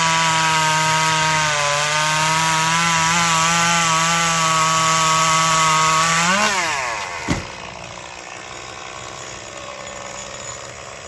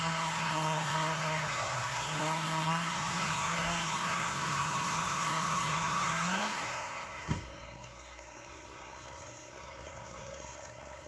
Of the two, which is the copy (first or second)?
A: second